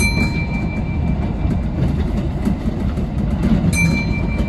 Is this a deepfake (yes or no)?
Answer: no